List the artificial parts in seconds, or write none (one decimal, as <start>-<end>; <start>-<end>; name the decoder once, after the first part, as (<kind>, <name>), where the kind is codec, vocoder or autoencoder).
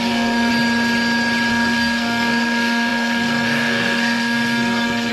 0.0-0.5 (codec, SNAC); 1.5-5.1